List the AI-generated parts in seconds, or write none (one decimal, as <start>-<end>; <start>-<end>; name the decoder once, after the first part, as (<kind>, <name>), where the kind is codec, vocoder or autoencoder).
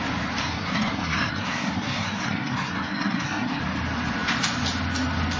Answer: 0.4-3.6 (codec, SNAC)